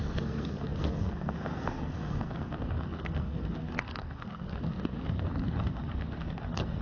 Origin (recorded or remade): remade